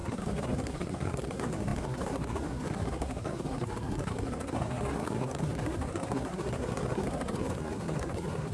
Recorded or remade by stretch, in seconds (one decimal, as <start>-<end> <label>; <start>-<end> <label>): 0.0-8.5 remade